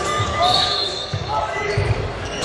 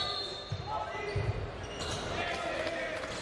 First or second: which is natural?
second